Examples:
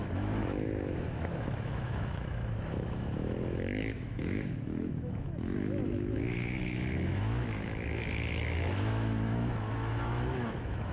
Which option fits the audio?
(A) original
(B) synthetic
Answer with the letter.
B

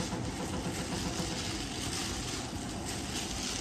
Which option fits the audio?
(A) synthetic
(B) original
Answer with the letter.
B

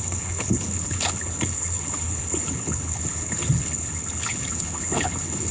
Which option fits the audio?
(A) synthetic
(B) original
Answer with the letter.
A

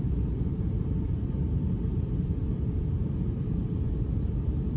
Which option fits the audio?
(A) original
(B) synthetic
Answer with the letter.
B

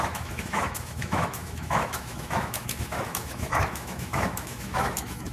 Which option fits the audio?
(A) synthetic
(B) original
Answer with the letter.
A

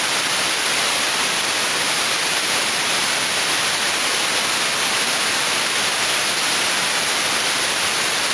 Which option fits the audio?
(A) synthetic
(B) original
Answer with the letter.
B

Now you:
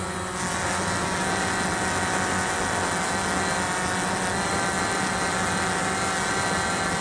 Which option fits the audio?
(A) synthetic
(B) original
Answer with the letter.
B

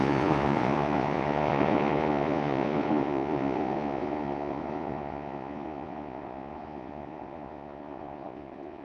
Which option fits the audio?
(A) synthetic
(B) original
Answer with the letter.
A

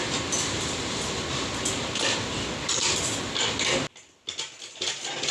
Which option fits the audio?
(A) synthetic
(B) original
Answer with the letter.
B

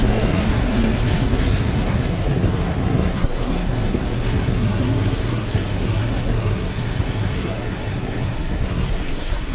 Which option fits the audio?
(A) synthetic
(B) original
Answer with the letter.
A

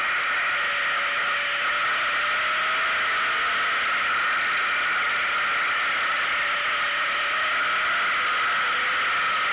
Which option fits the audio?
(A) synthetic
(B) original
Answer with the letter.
B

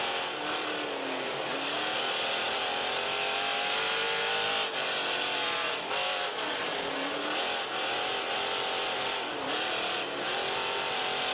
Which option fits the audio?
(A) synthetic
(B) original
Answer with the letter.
B